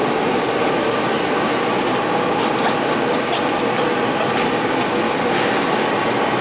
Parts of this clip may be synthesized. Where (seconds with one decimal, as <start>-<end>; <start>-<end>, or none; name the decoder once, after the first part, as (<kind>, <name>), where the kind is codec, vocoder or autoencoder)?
none